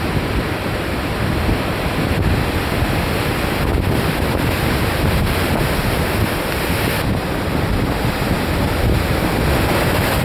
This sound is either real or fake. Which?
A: real